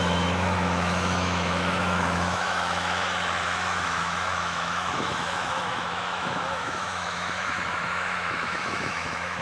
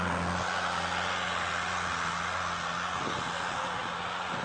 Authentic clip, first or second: second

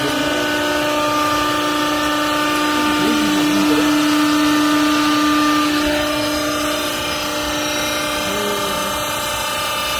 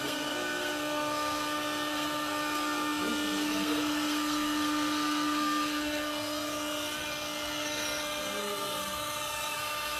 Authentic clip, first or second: first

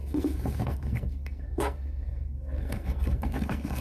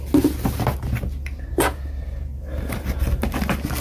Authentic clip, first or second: second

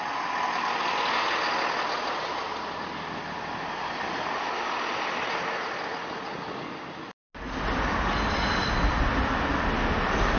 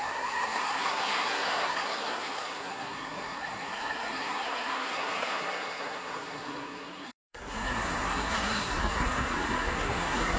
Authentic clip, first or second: first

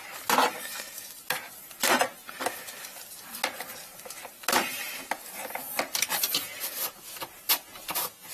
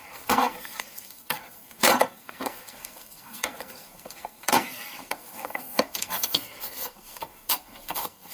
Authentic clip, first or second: first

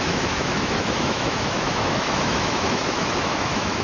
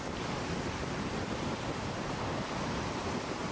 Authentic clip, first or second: second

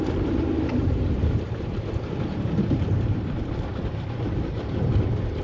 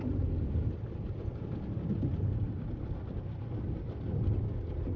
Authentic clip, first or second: second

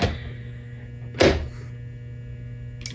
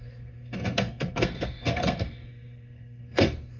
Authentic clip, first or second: first